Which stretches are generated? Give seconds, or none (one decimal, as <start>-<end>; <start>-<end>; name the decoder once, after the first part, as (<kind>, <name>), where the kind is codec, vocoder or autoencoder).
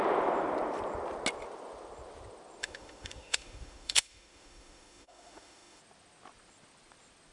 2.6-5.8 (autoencoder, DAC-VAE)